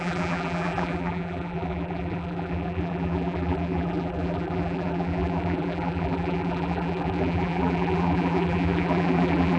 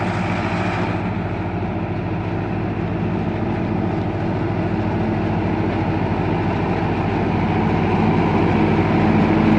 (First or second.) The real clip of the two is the second